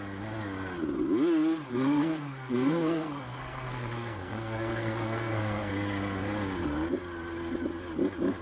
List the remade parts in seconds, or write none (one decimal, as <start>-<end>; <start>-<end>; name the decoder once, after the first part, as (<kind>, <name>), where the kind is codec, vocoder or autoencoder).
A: 1.7-5.7 (codec, SNAC)